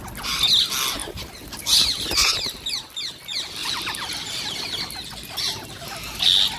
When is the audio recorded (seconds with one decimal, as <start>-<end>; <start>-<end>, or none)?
0.0-1.0; 2.4-3.6; 4.8-6.6